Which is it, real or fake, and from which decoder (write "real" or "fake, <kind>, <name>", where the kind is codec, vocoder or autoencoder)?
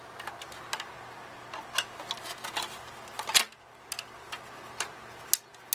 real